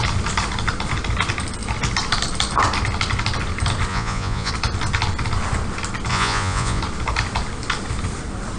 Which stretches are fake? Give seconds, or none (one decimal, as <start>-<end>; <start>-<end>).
3.9-4.5; 6.1-6.8